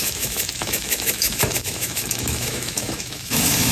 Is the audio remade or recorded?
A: remade